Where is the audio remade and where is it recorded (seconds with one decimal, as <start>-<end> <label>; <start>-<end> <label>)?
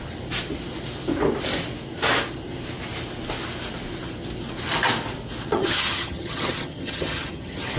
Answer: 0.0-5.5 recorded; 5.5-7.8 remade